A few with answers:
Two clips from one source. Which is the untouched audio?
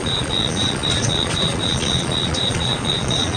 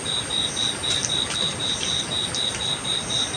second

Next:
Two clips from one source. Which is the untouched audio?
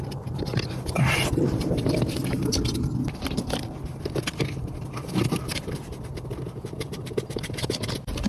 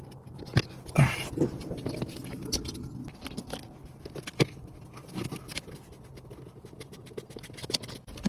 second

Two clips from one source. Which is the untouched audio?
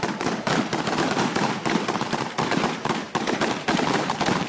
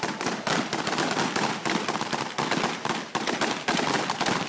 second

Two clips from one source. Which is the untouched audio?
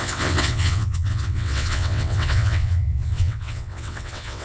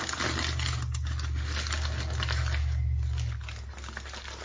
second